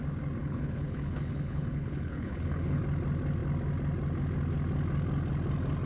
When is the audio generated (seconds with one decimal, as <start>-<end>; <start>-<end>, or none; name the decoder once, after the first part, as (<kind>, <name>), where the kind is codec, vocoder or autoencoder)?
0.4-2.8 (codec, HILCodec)

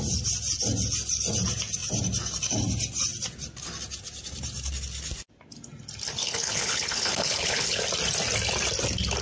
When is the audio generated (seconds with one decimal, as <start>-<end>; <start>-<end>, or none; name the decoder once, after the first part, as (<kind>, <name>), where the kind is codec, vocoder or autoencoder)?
6.2-7.8 (codec, HILCodec)

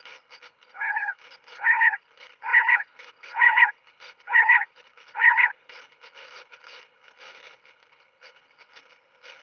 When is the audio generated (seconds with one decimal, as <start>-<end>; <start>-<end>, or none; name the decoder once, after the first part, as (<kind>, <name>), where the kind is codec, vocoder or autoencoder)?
0.0-9.4 (codec, HILCodec)

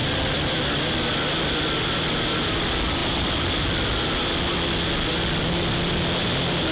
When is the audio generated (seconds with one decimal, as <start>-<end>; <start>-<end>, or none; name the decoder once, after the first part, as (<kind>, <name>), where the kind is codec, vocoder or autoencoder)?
none

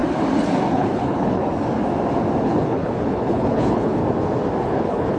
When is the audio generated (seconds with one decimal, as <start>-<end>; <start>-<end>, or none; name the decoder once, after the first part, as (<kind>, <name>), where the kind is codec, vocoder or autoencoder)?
0.7-1.4 (codec, HILCodec); 2.4-4.0; 4.6-5.2